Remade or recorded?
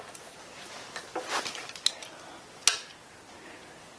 recorded